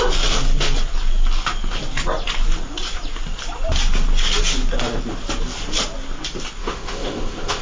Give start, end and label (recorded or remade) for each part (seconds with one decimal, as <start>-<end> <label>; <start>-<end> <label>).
0.0-6.6 recorded; 6.6-7.6 remade